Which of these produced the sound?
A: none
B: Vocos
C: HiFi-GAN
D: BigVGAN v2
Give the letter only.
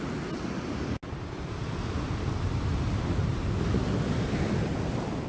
A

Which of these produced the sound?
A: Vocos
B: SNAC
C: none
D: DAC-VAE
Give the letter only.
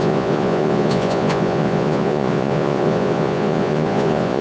A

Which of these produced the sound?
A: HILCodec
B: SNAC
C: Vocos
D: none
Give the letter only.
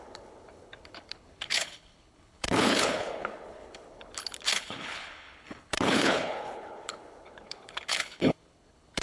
A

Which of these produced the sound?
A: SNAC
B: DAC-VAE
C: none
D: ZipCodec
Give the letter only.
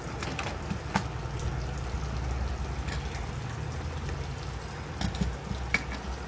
C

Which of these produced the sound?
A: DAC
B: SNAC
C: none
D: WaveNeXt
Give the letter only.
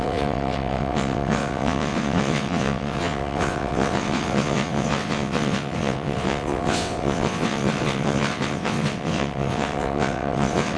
D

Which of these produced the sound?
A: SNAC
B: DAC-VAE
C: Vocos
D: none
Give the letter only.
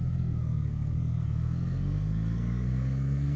A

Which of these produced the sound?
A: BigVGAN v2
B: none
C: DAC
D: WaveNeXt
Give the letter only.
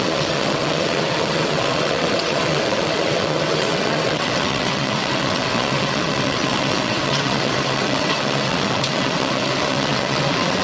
D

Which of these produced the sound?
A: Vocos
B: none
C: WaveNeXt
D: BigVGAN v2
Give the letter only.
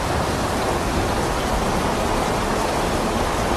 B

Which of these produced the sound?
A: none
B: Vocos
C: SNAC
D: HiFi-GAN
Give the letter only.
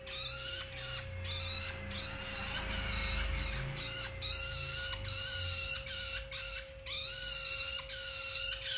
A